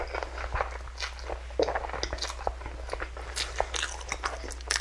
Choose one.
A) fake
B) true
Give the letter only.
B